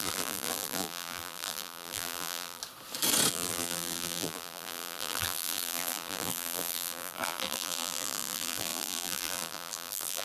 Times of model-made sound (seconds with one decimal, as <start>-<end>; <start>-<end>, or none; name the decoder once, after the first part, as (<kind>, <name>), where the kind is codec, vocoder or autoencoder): 0.0-2.6 (vocoder, BigVGAN v2); 3.3-10.2